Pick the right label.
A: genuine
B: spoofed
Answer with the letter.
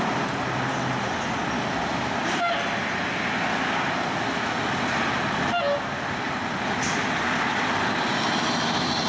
A